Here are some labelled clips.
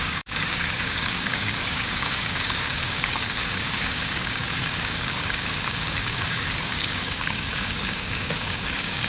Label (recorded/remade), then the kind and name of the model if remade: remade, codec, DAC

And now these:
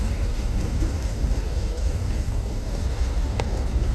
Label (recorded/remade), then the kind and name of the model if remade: remade, codec, DAC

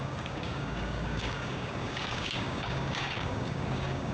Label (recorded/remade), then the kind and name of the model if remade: remade, codec, DAC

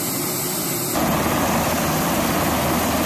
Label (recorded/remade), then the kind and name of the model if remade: recorded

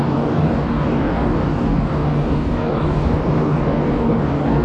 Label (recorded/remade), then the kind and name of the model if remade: remade, codec, DAC